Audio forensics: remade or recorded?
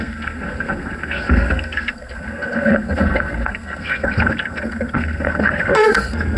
remade